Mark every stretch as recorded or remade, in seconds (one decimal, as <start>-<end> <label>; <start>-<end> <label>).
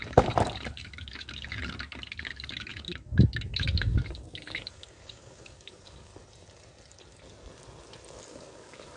0.0-6.1 remade; 6.1-8.1 recorded; 8.1-9.0 remade